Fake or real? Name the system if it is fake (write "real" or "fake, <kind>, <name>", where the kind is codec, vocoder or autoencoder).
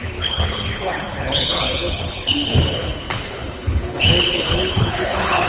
fake, codec, HILCodec